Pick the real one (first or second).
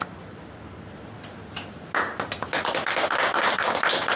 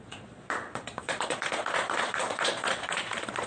first